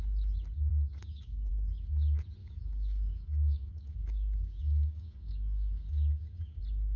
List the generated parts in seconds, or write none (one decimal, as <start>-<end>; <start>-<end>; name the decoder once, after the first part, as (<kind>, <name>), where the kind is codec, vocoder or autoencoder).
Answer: 0.7-1.5 (codec, DAC); 2.4-6.6